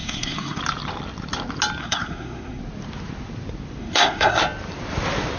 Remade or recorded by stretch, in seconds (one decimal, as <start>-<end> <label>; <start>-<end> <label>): 0.0-0.6 remade; 0.6-1.8 recorded; 1.8-2.6 remade; 2.6-3.8 recorded; 3.8-4.4 remade; 4.4-5.4 recorded

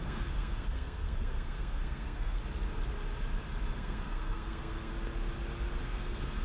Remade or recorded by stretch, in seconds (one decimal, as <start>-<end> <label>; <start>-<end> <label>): 0.0-2.4 remade; 2.4-3.7 recorded; 3.7-4.9 remade; 4.9-5.8 recorded; 5.8-6.4 remade

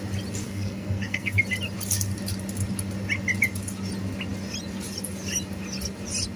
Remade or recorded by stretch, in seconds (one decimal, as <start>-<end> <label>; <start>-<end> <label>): 0.0-0.4 recorded; 0.4-1.4 remade; 1.4-6.4 recorded

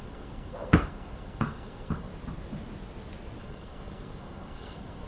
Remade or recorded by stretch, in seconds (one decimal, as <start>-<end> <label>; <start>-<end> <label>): 0.0-2.1 remade; 2.1-3.4 recorded; 3.4-5.1 remade

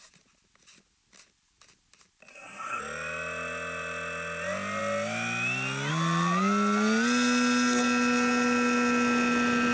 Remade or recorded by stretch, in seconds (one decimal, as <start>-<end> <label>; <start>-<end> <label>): 0.0-2.3 recorded; 2.3-2.8 remade; 2.8-9.7 recorded